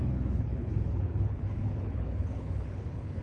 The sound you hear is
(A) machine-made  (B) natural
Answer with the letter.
A